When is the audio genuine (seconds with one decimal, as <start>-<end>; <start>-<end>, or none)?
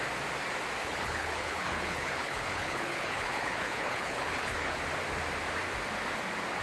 0.0-0.8; 4.8-6.6